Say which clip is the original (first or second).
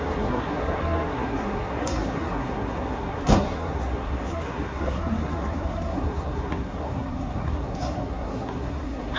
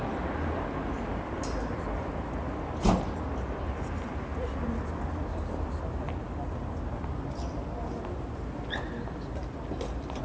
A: second